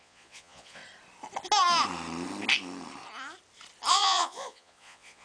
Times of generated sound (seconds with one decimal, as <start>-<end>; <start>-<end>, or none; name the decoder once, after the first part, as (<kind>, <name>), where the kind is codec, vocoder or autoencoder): 0.0-0.8 (vocoder, Vocos); 3.9-5.2